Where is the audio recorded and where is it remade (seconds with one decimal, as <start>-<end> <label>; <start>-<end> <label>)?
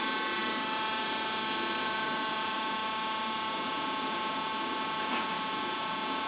0.0-0.4 remade; 0.4-1.8 recorded; 1.8-2.8 remade; 2.8-3.5 recorded; 3.5-4.5 remade; 4.5-5.0 recorded; 5.0-6.3 remade